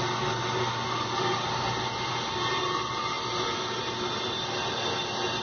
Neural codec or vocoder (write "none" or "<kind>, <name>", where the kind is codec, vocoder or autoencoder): none